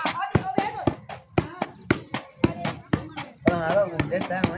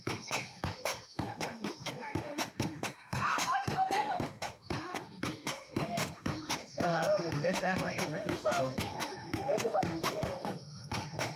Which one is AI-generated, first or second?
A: second